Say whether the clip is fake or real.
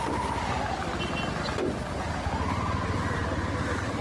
real